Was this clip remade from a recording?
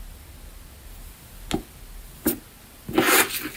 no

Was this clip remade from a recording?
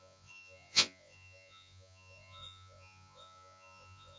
yes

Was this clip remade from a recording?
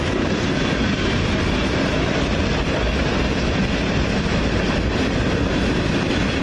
no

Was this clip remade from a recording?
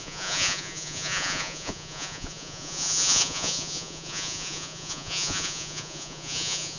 yes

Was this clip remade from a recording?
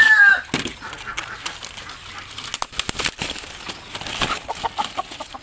no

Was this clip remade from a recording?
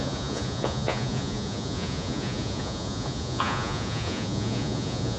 yes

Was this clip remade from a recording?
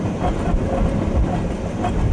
no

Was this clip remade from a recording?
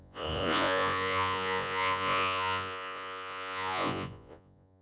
yes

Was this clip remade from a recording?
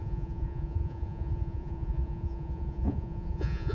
yes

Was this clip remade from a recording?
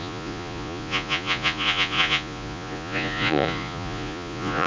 yes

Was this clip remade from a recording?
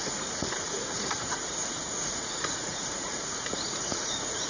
yes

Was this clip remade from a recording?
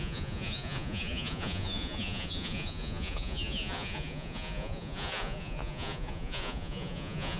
yes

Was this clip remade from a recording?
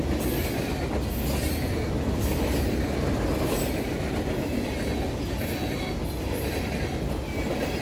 no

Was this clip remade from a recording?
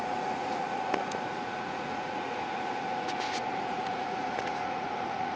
yes